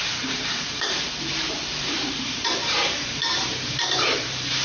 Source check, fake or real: fake